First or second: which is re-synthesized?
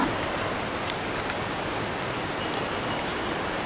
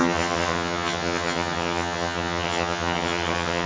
second